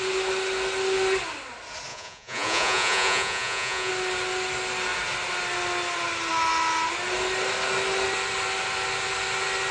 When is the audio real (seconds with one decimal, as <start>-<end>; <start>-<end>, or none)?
0.0-1.9; 3.9-9.7

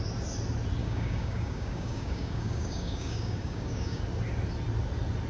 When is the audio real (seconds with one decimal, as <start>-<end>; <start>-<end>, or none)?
0.0-0.8; 4.0-5.3

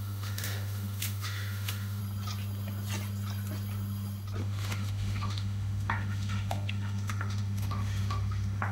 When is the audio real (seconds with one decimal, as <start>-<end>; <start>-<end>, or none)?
2.0-4.4

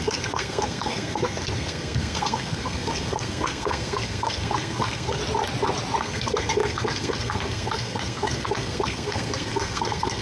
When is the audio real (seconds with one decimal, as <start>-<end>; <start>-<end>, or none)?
5.2-6.0

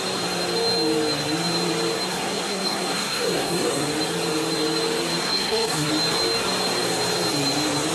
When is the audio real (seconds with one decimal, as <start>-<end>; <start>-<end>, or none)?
0.0-2.1; 3.9-5.2; 5.9-7.9

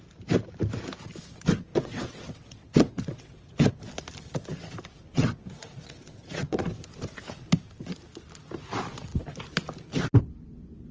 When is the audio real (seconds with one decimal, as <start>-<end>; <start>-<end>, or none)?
0.0-1.7; 3.7-5.1; 6.6-10.9

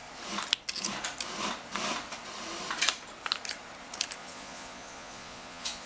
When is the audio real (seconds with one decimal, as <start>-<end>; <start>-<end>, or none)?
0.0-4.2